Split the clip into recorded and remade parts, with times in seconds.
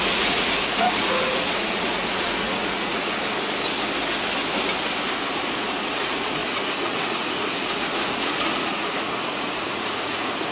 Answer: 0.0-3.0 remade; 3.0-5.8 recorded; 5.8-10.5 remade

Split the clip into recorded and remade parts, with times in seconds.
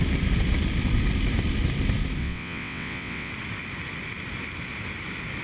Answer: 0.0-2.2 recorded; 2.2-3.3 remade; 3.3-5.4 recorded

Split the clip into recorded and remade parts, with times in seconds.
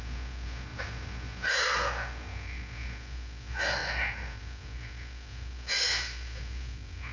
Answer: 0.0-7.1 recorded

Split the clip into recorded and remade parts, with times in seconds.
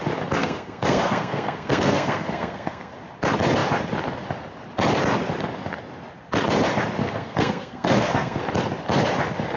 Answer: 0.0-0.4 recorded; 0.4-2.9 remade; 2.9-7.0 recorded; 7.0-8.4 remade; 8.4-9.6 recorded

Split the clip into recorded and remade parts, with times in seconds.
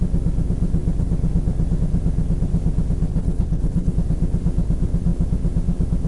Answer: 0.0-3.1 recorded; 3.1-3.9 remade; 3.9-6.1 recorded